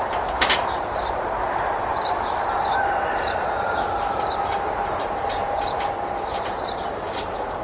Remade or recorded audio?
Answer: remade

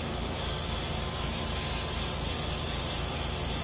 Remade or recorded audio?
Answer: recorded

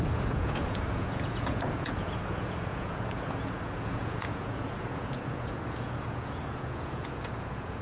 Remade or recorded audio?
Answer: remade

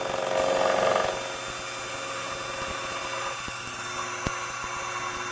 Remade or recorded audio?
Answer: recorded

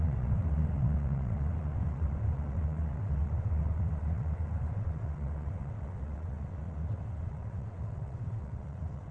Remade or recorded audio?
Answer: remade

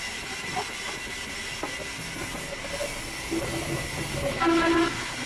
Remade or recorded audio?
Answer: recorded